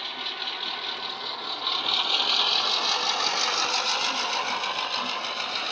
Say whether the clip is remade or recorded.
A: recorded